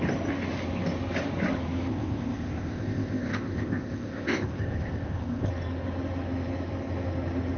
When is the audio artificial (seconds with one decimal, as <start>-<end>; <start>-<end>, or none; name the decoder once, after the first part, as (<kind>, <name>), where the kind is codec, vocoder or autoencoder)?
1.9-5.5 (codec, ZipCodec)